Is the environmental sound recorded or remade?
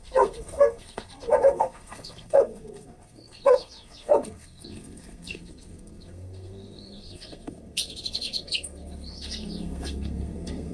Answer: remade